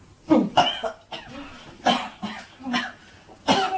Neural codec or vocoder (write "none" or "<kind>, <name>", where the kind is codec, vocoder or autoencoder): none